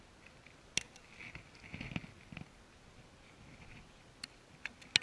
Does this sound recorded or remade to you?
recorded